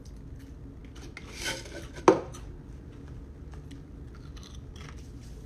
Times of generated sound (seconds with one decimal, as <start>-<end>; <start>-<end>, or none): none